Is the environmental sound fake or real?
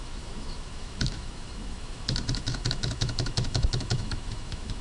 fake